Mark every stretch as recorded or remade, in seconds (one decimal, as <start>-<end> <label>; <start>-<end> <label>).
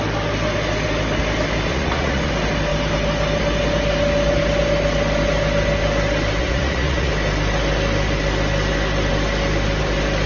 0.0-1.7 recorded; 1.7-2.3 remade; 2.3-6.4 recorded; 6.4-7.1 remade; 7.1-10.3 recorded